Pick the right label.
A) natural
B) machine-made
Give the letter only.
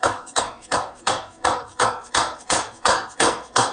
B